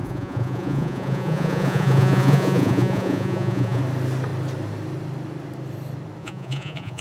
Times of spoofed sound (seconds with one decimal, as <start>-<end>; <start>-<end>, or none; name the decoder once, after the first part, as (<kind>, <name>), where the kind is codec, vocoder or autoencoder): 0.0-3.8 (vocoder, Vocos); 6.2-7.0